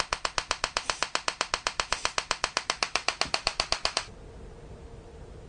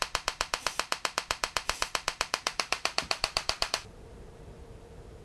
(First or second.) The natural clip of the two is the first